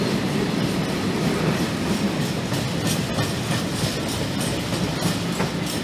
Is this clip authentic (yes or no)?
yes